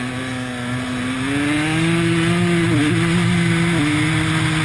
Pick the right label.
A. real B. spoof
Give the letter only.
A